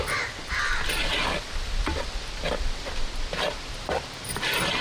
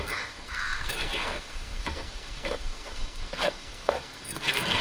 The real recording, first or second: first